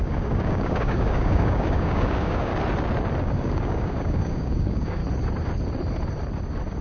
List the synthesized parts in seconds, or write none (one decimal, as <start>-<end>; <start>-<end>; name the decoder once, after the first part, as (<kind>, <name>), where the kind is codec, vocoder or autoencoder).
0.0-2.5 (codec, DAC); 3.2-5.0